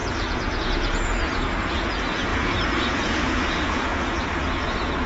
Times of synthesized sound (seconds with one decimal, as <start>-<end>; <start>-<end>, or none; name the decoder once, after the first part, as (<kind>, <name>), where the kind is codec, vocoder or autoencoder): 0.0-5.1 (vocoder, Vocos)